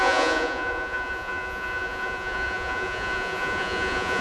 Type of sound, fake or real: fake